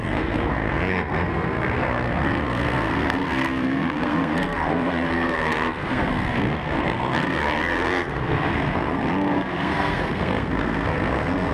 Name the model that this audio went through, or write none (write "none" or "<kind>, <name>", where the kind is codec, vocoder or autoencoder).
codec, SNAC